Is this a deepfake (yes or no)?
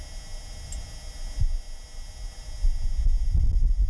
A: no